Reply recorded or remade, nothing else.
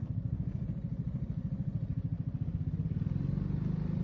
recorded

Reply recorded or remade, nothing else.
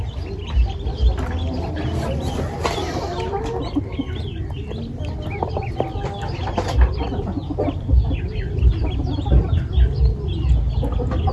recorded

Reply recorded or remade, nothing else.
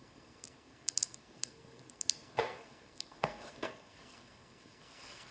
remade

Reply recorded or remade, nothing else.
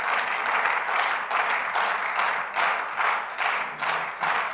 recorded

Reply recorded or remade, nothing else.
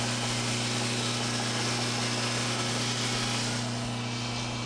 recorded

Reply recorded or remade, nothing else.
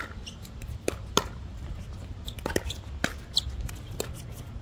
recorded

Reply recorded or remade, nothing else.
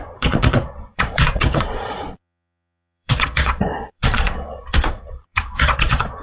remade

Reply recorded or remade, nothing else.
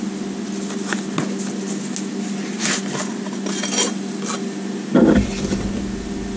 recorded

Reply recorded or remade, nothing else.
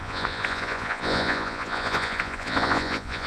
remade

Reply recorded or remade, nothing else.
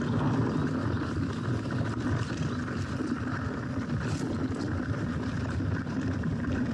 remade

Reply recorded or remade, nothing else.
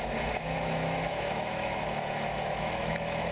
remade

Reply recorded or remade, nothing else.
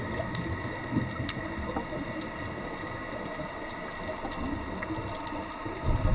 recorded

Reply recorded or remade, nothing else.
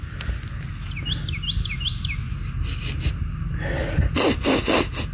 recorded